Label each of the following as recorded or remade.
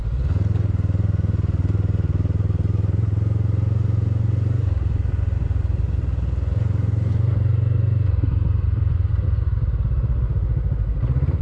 recorded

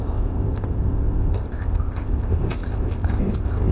remade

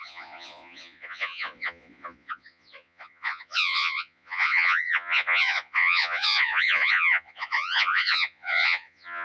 remade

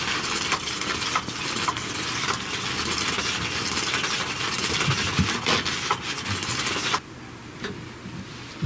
recorded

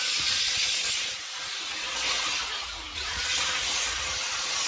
remade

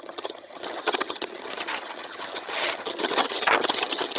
remade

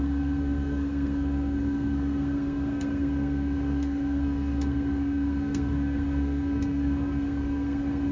remade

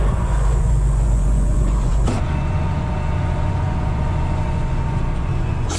remade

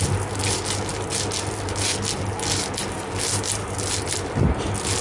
recorded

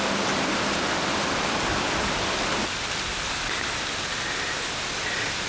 recorded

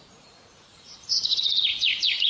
remade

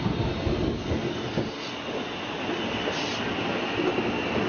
recorded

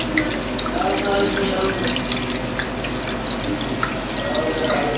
recorded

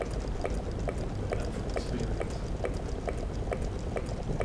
recorded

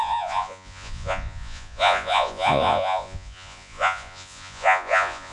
remade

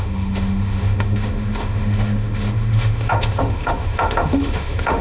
remade